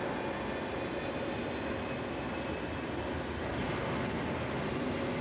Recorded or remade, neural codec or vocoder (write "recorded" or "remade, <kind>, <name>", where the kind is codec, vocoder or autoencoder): recorded